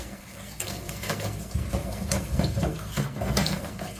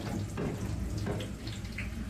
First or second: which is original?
second